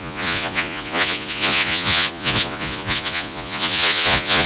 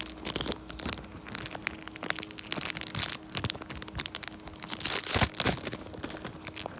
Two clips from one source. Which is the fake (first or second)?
first